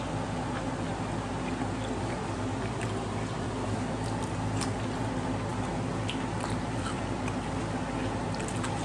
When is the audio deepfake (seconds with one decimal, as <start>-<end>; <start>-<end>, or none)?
none